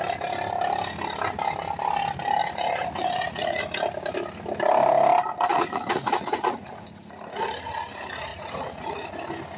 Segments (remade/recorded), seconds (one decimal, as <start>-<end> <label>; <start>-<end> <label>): 0.0-2.4 recorded; 2.4-3.6 remade; 3.6-5.5 recorded; 5.5-7.2 remade; 7.2-8.3 recorded; 8.3-9.1 remade; 9.1-9.6 recorded